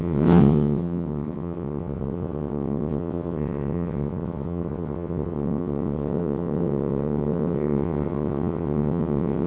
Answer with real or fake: fake